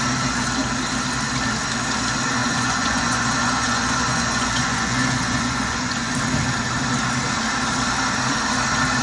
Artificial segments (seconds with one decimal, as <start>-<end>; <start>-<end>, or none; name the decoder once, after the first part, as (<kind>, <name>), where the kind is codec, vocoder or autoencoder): 2.4-6.1 (vocoder, Vocos)